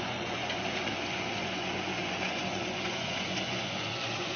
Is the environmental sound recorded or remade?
remade